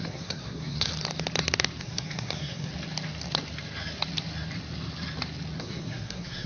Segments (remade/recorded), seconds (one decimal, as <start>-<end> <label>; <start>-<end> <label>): 0.0-0.9 remade; 0.9-1.8 recorded; 1.8-2.7 remade; 2.7-5.6 recorded; 5.6-6.5 remade